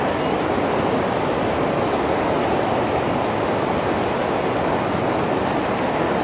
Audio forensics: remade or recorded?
recorded